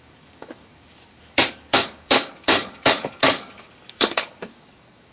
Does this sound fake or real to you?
fake